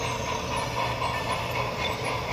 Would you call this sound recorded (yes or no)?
yes